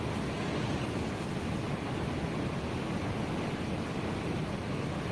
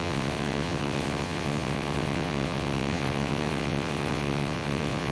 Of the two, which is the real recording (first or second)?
first